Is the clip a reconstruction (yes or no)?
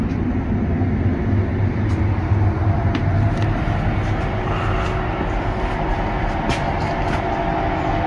no